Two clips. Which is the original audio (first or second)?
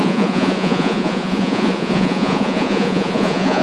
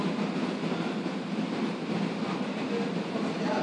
second